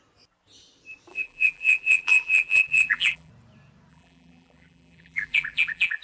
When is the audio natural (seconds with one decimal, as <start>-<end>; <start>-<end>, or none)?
0.0-1.1; 3.3-3.9